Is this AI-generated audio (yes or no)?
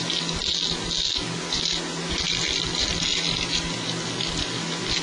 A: no